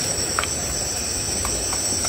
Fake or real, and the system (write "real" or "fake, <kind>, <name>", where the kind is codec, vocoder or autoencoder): fake, vocoder, BigVGAN v2